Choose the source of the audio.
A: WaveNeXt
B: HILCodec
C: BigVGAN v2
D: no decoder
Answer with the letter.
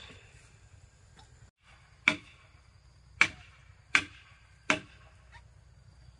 D